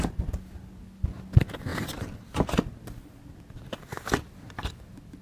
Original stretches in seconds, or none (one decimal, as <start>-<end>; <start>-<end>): 0.0-5.2